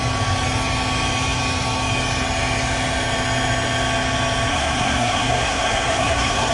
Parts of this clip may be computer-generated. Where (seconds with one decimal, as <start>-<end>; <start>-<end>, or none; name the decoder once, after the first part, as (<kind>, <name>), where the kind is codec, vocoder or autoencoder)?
4.5-6.5 (codec, SNAC)